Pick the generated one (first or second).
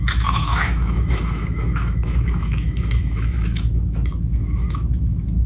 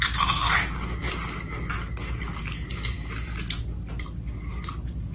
first